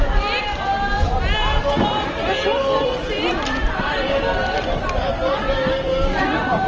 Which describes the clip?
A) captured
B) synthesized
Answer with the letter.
B